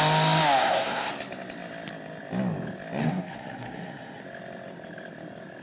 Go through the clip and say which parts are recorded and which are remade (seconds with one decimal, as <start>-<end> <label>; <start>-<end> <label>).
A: 0.0-0.6 recorded; 0.6-1.1 remade; 1.1-3.0 recorded; 3.0-4.2 remade; 4.2-5.6 recorded